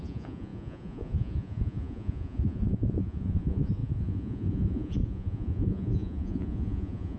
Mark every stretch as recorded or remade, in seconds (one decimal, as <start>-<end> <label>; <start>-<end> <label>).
0.0-7.2 remade